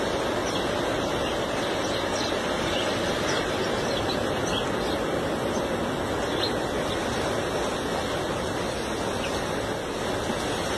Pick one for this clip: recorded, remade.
recorded